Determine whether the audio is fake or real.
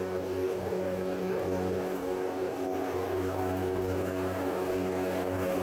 fake